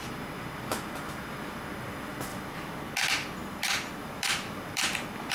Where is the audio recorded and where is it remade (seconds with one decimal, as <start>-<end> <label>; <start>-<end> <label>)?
0.0-2.3 recorded; 2.3-2.8 remade; 2.8-3.4 recorded; 3.4-4.7 remade; 4.7-5.3 recorded